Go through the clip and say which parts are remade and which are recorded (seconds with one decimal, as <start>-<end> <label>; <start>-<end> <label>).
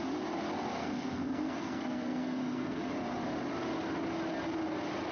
0.0-0.8 recorded; 0.8-2.9 remade; 2.9-5.1 recorded